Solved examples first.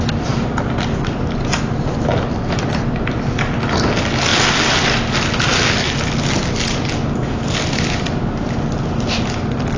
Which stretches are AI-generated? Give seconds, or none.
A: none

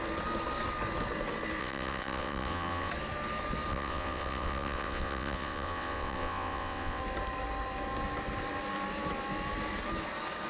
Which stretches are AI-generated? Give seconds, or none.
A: 1.6-2.9 (vocoder, WaveNeXt); 3.7-7.0

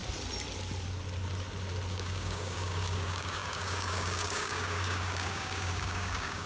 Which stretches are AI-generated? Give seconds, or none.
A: 1.9-6.5 (codec, DAC)

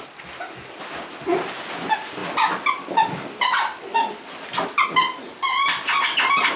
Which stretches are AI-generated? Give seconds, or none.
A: none

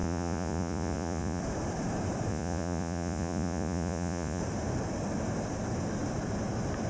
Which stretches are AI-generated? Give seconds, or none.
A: 0.0-1.4 (vocoder, Vocos); 2.3-4.4

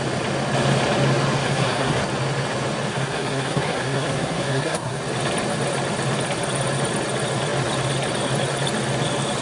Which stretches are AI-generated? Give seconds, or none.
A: 1.4-2.0 (codec, SNAC); 2.9-5.0

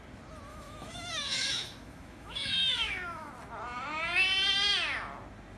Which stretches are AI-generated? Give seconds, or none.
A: 0.5-3.3 (autoencoder, DAC-VAE)

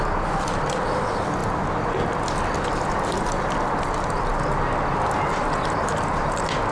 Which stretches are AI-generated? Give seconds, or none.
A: none